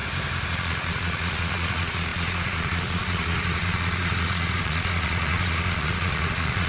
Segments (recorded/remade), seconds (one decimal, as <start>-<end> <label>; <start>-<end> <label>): 0.0-0.5 recorded; 0.5-6.7 remade